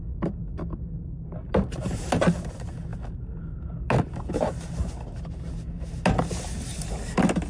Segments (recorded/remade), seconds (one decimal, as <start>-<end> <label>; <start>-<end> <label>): 0.0-7.5 recorded